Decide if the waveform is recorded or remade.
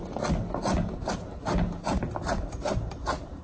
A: recorded